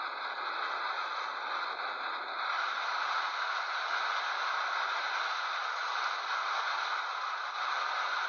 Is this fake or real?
real